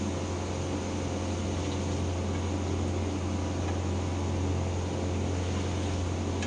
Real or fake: real